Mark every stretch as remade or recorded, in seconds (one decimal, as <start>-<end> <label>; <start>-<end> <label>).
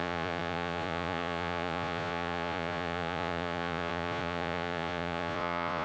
0.0-5.8 remade